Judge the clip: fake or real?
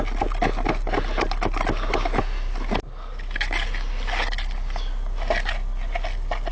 real